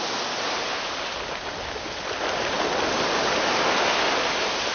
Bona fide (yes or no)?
yes